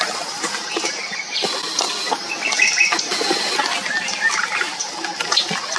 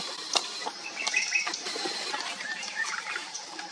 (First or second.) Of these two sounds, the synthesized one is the second